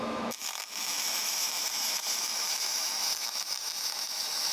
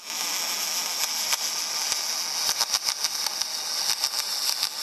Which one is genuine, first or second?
second